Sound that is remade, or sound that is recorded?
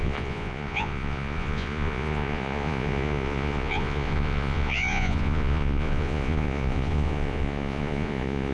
remade